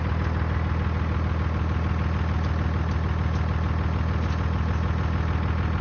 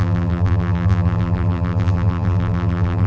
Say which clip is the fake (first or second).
second